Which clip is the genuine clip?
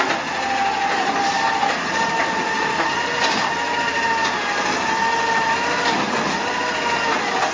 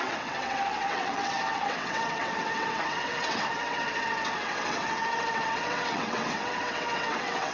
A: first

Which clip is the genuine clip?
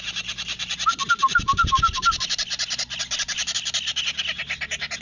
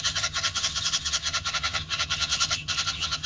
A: first